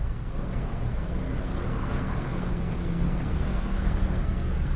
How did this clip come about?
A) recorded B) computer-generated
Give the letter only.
B